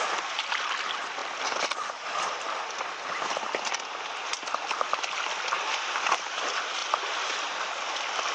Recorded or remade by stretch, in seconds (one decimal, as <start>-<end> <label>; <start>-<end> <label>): 0.0-8.3 recorded